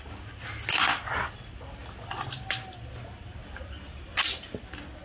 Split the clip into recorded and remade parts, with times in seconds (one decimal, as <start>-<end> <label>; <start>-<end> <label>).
0.0-5.0 recorded